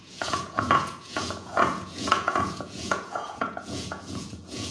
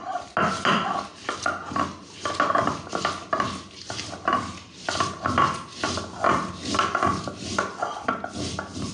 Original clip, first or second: second